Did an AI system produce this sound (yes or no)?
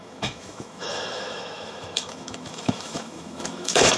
yes